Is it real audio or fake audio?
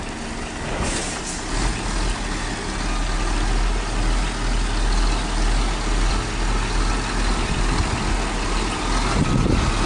real